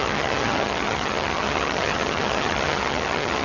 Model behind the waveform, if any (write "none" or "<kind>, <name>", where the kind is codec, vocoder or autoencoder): vocoder, HiFi-GAN